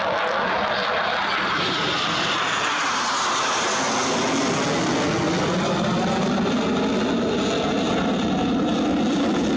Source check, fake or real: real